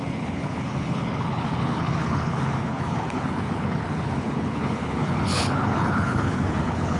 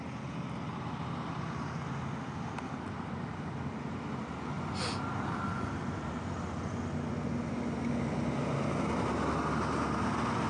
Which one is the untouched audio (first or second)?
second